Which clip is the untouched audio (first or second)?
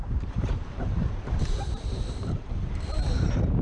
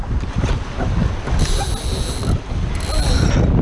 second